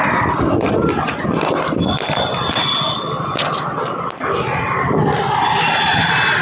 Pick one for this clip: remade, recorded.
recorded